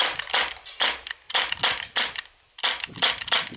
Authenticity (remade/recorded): recorded